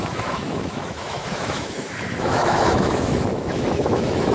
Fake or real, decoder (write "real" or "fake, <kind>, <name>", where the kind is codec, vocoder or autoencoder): fake, autoencoder, DAC-VAE